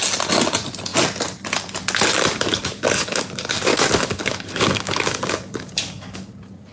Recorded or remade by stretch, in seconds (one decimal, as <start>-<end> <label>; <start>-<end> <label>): 0.0-2.5 recorded; 2.5-6.3 remade; 6.3-6.7 recorded